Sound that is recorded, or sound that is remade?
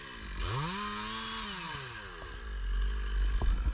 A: recorded